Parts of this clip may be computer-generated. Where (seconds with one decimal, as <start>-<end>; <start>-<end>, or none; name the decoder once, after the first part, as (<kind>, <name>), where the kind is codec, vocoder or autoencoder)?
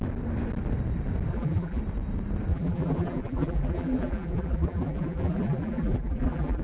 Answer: 1.3-1.8 (vocoder, BigVGAN v2); 2.5-6.6